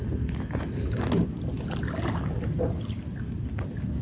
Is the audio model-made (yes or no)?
no